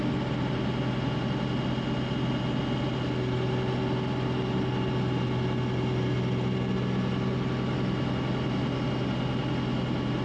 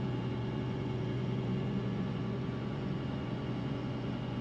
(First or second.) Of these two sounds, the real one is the first